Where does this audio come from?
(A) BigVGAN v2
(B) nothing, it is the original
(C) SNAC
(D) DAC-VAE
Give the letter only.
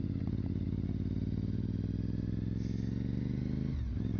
B